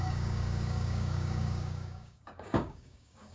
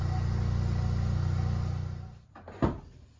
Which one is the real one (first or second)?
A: second